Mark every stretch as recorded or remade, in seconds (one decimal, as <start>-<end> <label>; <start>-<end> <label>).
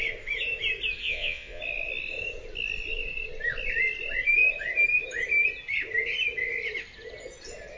0.0-1.0 recorded; 1.0-1.6 remade; 1.6-7.8 recorded